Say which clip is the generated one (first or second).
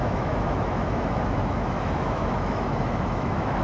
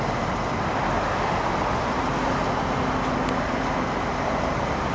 first